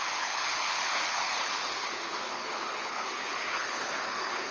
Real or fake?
fake